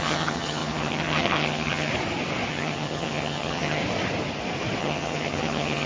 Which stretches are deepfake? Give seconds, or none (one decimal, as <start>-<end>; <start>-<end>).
0.0-1.9; 2.5-3.8; 4.8-5.9